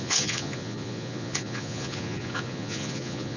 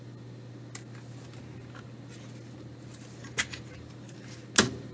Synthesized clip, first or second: first